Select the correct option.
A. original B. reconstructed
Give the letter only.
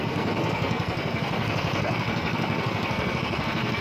B